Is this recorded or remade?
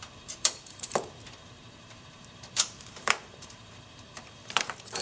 remade